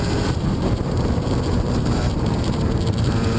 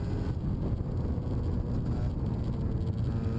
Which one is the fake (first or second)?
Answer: first